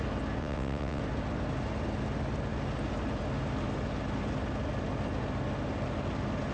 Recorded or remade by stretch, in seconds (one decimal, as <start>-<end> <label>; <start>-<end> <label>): 0.0-0.4 recorded; 0.4-1.0 remade; 1.0-6.5 recorded